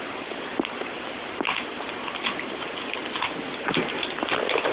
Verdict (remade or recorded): recorded